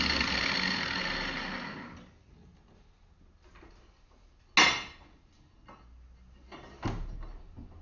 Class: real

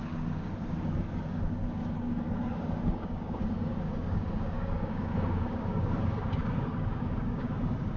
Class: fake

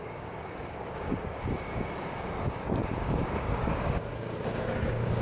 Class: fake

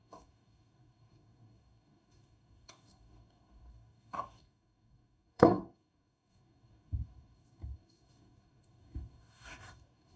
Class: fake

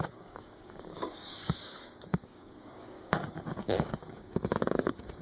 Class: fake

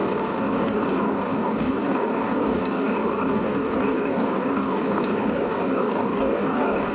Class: fake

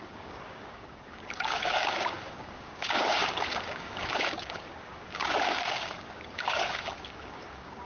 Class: fake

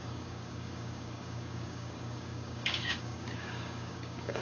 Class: fake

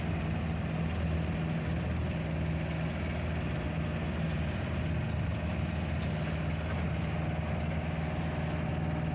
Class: real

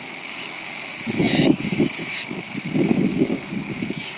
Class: fake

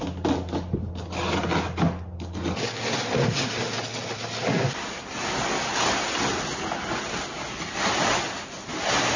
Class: real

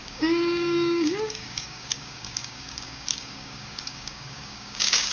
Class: fake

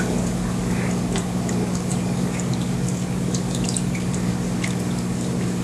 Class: fake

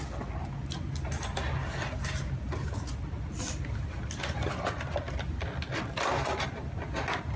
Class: real